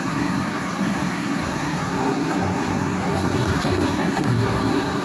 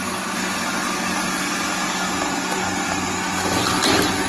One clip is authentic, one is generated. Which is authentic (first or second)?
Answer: second